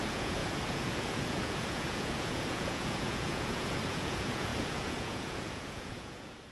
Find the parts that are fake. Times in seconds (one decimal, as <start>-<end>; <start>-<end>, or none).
0.0-6.5